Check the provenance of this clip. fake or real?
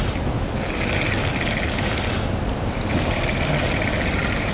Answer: real